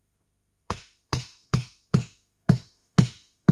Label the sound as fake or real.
fake